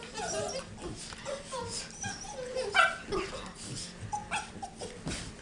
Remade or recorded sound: recorded